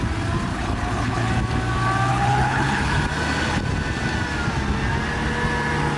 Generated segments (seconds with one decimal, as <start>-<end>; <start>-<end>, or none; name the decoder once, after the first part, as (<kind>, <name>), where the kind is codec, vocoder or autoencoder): 0.5-1.3 (codec, HILCodec); 2.1-3.0